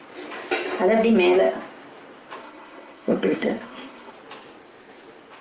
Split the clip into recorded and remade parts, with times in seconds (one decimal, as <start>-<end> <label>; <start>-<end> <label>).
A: 0.0-2.4 recorded; 2.4-4.1 remade; 4.1-5.4 recorded